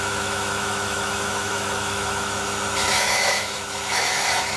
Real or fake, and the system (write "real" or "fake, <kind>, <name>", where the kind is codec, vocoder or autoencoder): fake, autoencoder, DAC-VAE